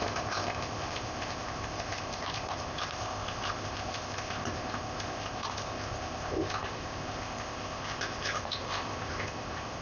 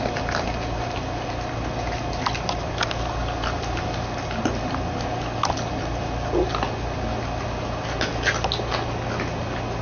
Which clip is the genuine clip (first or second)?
second